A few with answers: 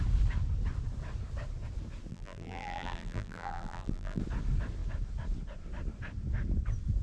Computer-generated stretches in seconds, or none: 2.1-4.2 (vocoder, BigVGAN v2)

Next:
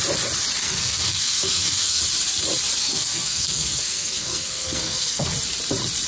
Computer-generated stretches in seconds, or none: 0.6-2.0 (codec, SNAC); 2.8-5.3

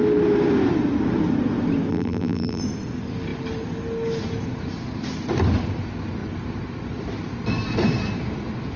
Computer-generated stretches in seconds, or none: 1.9-2.6 (vocoder, BigVGAN v2)

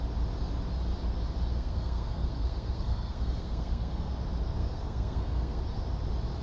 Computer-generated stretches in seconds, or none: 1.5-4.1 (codec, SNAC); 4.6-5.6

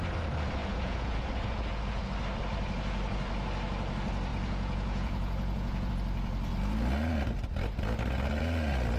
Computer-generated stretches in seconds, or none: 0.6-2.1 (vocoder, Vocos); 4.3-5.9

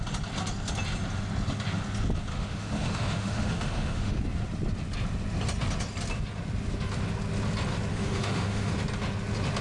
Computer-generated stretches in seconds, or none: 2.3-4.2 (autoencoder, DAC-VAE); 7.9-8.7